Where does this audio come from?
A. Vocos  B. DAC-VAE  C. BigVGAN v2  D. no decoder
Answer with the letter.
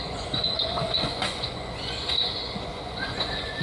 A